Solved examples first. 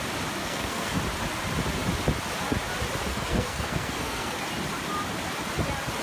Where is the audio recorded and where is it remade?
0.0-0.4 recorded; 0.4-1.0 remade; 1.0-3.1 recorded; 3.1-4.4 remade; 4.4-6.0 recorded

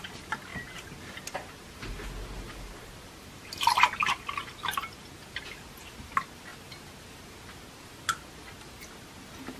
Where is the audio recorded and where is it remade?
0.0-9.6 recorded

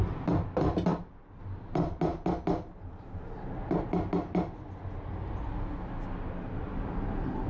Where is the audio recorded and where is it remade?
0.0-0.9 recorded; 0.9-1.4 remade; 1.4-7.5 recorded

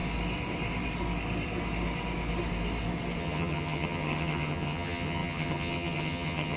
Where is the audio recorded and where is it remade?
0.0-3.2 recorded; 3.2-6.6 remade